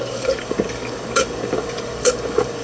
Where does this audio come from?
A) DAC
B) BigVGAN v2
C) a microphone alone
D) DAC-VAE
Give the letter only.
A